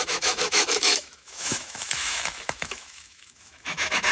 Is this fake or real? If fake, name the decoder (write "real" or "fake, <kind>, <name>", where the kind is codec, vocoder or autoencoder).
fake, autoencoder, DAC-VAE